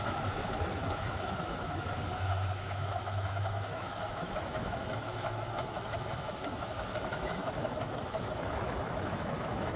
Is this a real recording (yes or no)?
no